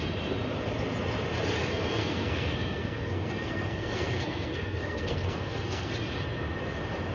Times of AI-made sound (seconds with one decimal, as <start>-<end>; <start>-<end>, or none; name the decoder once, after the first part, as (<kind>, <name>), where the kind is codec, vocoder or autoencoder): 1.6-5.9 (codec, SNAC)